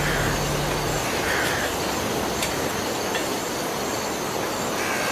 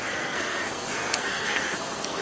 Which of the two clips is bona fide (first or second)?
first